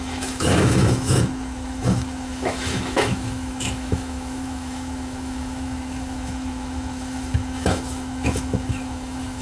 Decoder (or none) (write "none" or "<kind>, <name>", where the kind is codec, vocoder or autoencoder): autoencoder, DAC-VAE